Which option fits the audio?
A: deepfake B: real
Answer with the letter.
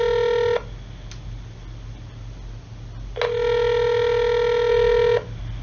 B